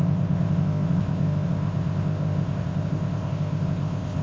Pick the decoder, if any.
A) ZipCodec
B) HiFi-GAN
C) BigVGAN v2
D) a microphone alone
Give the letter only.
A